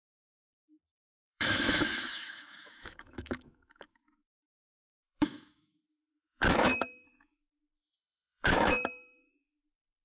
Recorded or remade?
remade